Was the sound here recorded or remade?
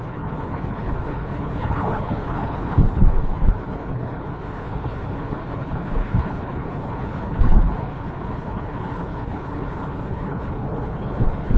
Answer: remade